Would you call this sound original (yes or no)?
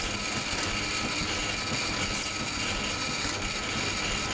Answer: yes